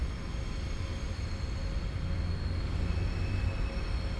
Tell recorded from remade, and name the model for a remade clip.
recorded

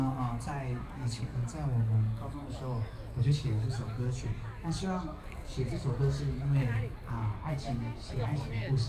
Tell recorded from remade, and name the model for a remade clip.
remade, codec, DAC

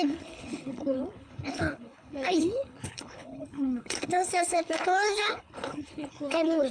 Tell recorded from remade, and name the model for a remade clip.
remade, codec, HILCodec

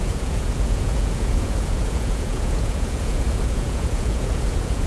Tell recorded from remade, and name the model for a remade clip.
remade, vocoder, Vocos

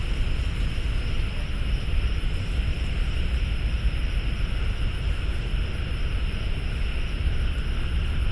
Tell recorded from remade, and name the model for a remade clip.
recorded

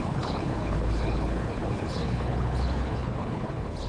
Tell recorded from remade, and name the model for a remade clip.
remade, codec, HILCodec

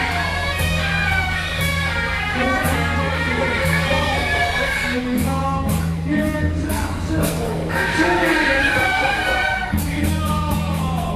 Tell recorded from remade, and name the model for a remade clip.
remade, codec, SNAC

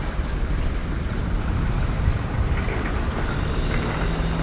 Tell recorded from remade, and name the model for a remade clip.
recorded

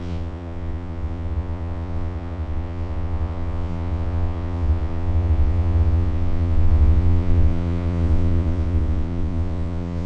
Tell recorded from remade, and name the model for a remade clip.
remade, vocoder, Vocos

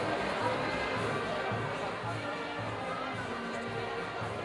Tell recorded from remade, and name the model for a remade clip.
recorded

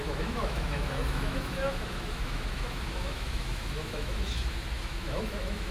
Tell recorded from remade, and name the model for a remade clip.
remade, autoencoder, DAC-VAE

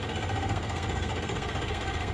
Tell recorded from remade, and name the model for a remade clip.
remade, codec, SNAC